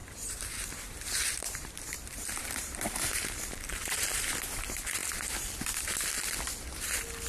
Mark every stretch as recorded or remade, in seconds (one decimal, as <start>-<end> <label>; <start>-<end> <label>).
0.0-4.4 remade; 4.4-7.3 recorded